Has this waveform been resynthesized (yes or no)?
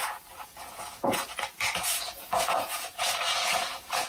yes